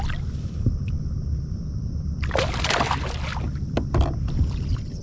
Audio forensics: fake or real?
real